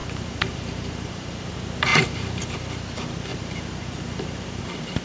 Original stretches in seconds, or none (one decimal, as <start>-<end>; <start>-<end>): 1.5-1.9; 2.6-3.3; 4.6-5.0